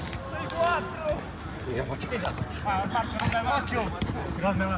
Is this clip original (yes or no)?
yes